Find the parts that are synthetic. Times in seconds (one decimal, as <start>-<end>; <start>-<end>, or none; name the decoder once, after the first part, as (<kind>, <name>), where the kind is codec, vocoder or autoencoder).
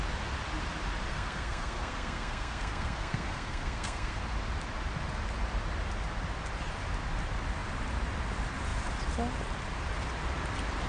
1.1-4.2 (codec, SNAC)